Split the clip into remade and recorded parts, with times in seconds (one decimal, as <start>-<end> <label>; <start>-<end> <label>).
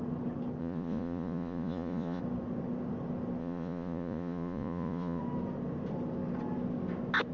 0.0-0.6 recorded; 0.6-2.2 remade; 2.2-3.4 recorded; 3.4-5.2 remade; 5.2-7.3 recorded